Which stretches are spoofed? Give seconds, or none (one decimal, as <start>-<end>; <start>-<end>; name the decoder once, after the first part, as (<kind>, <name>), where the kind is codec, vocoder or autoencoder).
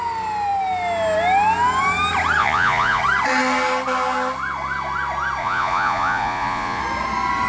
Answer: 2.4-3.0 (vocoder, Vocos); 5.4-6.8